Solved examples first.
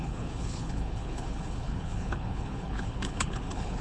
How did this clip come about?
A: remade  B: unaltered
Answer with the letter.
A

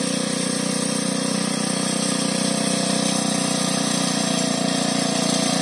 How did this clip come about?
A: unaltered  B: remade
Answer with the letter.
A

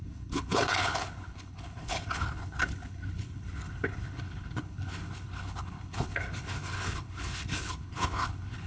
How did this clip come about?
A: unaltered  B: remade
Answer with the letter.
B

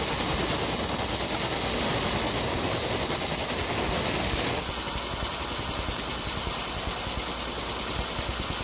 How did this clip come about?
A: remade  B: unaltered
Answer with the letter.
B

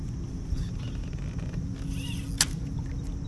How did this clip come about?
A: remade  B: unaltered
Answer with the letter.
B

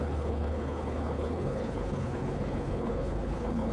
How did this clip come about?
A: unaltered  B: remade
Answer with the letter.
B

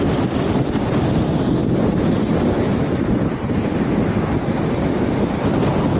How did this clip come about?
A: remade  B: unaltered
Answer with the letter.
B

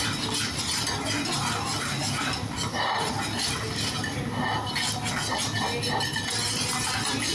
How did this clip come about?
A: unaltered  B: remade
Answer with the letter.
A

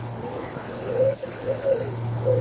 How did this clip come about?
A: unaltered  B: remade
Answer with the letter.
B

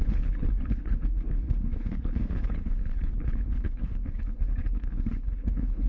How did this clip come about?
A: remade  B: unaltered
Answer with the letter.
A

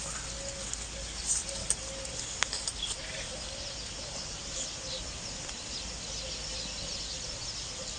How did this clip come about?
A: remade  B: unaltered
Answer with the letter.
B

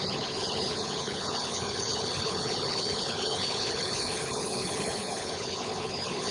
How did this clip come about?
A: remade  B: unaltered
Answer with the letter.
A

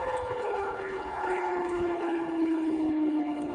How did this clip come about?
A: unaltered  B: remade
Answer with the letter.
B